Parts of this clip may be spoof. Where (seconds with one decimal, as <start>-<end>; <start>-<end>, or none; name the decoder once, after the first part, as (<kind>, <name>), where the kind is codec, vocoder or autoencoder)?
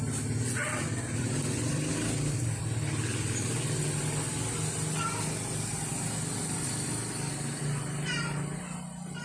0.7-1.9 (vocoder, BigVGAN v2)